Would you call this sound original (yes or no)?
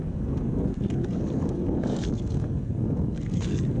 no